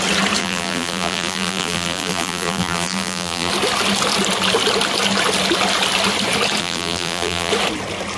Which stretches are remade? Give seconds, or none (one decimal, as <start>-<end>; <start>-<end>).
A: 0.4-3.5; 6.6-7.5